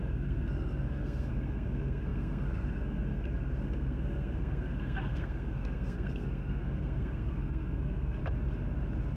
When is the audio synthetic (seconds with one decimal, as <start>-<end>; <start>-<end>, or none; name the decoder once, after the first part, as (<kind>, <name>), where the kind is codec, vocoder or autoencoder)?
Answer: 0.0-8.2 (codec, SNAC)